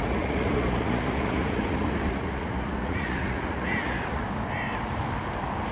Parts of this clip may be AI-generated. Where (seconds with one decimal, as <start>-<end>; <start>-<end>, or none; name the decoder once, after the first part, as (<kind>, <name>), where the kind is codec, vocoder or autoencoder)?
0.0-4.2 (vocoder, Vocos)